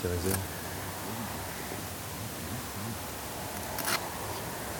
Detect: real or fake real